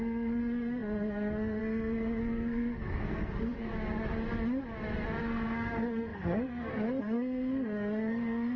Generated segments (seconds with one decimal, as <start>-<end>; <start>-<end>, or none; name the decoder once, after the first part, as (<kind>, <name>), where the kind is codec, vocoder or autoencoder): 0.0-3.7 (codec, SNAC); 5.2-8.6

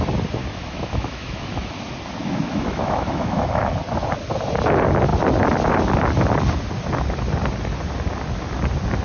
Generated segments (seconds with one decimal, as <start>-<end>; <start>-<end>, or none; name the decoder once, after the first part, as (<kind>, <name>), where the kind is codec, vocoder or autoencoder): 0.4-1.7 (autoencoder, DAC-VAE); 2.2-3.8

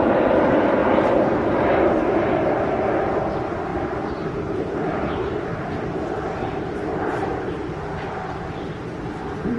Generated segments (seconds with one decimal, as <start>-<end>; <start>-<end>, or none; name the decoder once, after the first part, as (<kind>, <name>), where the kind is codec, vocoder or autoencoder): 0.8-1.7 (vocoder, BigVGAN v2); 3.7-5.7; 6.9-7.5

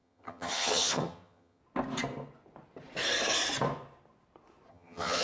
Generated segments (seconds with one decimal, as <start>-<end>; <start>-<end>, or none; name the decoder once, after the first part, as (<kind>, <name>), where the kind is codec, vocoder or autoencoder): 0.0-1.6 (vocoder, HiFi-GAN); 4.7-5.2

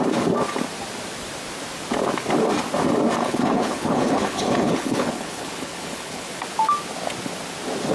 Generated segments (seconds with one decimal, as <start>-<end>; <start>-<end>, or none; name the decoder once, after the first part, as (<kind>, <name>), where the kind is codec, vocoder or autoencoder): 3.2-6.3 (codec, HILCodec)

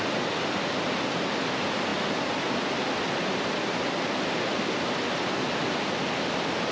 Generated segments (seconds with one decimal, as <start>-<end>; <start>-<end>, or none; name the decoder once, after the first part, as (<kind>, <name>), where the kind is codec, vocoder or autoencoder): none

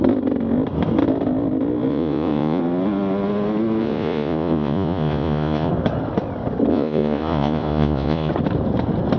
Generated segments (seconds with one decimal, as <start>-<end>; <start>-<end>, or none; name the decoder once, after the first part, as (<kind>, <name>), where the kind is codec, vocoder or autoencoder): 1.9-2.6 (vocoder, Vocos); 3.8-5.7; 6.7-8.3

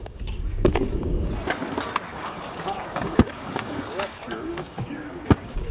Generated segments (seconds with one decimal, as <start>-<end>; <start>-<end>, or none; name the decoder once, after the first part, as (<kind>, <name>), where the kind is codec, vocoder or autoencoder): 0.0-1.3 (codec, DAC); 2.1-5.7